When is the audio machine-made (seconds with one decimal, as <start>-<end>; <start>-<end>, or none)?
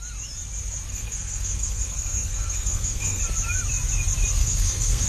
0.9-3.2; 4.4-5.1